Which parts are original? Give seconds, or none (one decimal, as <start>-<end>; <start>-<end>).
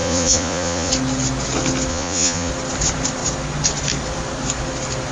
0.9-1.9; 2.5-5.1